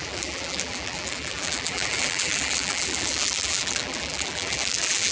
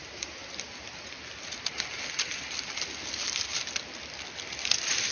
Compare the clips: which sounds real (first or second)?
second